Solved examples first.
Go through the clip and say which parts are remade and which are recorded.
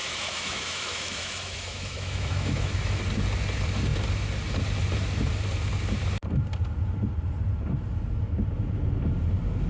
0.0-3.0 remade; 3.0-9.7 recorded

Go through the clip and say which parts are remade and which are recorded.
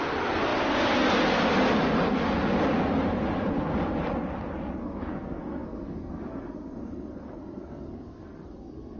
0.0-4.8 recorded; 4.8-9.0 remade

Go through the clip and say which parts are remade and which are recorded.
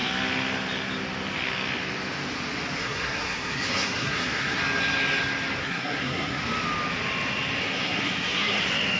0.0-2.8 recorded; 2.8-4.6 remade; 4.6-5.6 recorded; 5.6-6.4 remade; 6.4-7.6 recorded; 7.6-8.6 remade; 8.6-9.0 recorded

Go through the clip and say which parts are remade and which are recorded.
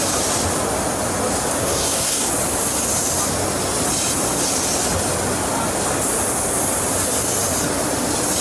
0.0-1.6 recorded; 1.6-2.3 remade; 2.3-8.4 recorded